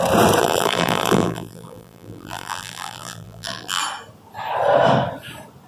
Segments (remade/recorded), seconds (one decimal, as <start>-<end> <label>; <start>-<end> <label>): 0.0-0.4 recorded; 0.4-3.8 remade; 3.8-5.7 recorded